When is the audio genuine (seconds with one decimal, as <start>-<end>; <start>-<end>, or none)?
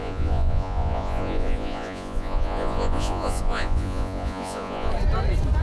4.9-5.6